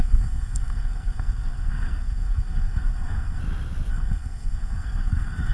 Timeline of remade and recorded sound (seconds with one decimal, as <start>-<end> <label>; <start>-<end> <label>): 0.0-3.4 remade; 3.4-3.9 recorded; 3.9-5.5 remade